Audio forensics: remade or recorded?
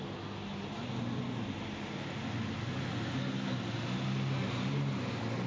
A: recorded